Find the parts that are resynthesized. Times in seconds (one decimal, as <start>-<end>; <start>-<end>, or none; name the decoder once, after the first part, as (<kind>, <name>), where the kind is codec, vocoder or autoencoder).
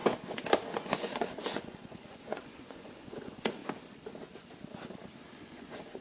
0.8-3.6 (vocoder, Vocos); 5.3-6.0